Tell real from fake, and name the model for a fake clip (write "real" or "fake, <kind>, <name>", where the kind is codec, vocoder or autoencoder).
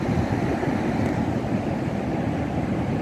real